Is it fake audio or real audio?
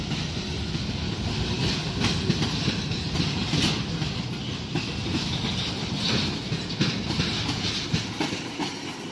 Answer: real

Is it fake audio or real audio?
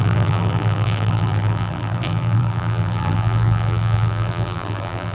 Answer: fake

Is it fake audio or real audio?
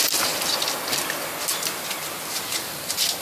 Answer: real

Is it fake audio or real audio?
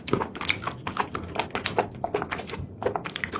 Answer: real